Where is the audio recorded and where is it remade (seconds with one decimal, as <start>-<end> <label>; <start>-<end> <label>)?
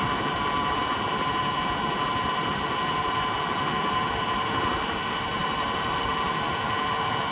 0.0-5.4 recorded; 5.4-6.1 remade; 6.1-7.3 recorded